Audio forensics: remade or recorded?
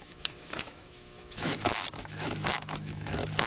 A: remade